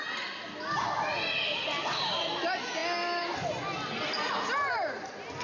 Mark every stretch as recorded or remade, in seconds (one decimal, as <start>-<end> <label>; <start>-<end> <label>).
0.0-5.4 recorded